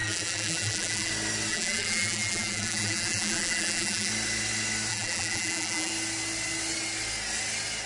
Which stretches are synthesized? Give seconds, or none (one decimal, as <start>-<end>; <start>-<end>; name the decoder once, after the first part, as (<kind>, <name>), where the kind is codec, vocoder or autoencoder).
0.0-1.1 (vocoder, BigVGAN v2); 1.5-4.1; 4.9-5.9